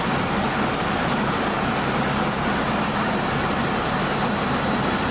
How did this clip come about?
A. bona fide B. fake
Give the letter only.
A